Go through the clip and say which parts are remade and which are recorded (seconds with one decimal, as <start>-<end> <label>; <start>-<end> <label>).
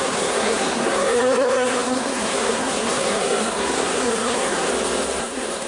0.0-4.7 remade; 4.7-5.2 recorded; 5.2-5.7 remade